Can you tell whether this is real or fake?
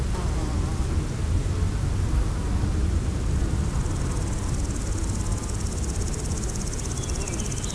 real